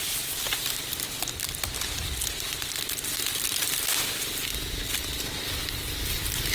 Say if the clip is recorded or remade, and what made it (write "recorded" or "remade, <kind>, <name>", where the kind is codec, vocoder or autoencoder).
recorded